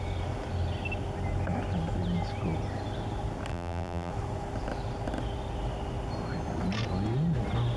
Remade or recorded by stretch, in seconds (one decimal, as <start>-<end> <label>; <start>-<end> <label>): 0.0-3.5 recorded; 3.5-4.1 remade; 4.1-7.8 recorded